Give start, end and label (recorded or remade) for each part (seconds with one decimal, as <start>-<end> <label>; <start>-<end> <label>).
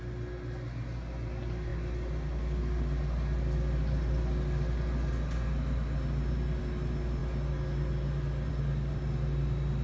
0.0-9.8 recorded